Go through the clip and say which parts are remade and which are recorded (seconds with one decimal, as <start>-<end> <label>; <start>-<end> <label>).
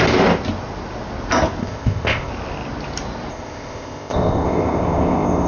0.0-1.6 recorded; 1.6-2.3 remade; 2.3-3.3 recorded; 3.3-5.5 remade